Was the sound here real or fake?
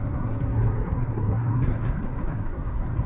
fake